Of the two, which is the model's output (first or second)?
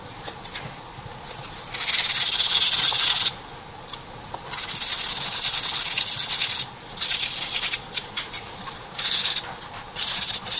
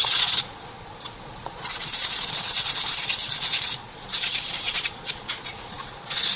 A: second